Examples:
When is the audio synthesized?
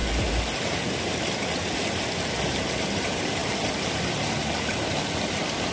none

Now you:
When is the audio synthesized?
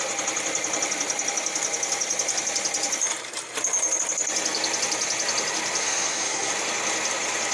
5.8-6.5 (codec, SNAC)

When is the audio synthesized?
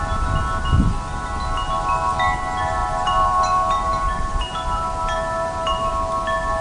2.8-5.9 (vocoder, BigVGAN v2)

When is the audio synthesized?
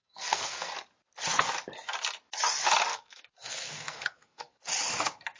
0.0-0.7 (codec, SNAC); 2.9-4.6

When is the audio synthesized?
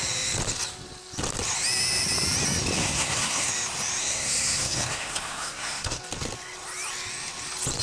2.8-3.5 (codec, SNAC); 4.0-6.0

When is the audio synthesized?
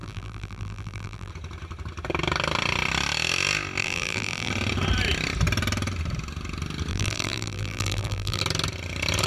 0.0-1.3 (vocoder, BigVGAN v2); 3.8-4.5; 6.9-8.4